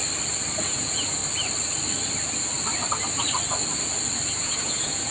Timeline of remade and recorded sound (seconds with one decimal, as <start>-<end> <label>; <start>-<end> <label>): 0.0-0.6 recorded; 0.6-1.2 remade; 1.2-4.3 recorded; 4.3-5.1 remade